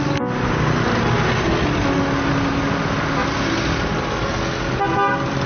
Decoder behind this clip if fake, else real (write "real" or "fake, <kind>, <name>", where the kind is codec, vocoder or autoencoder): real